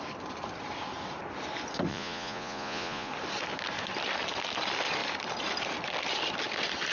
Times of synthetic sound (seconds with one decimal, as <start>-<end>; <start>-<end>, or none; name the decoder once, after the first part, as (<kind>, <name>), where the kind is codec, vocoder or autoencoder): 1.9-3.1 (vocoder, Vocos)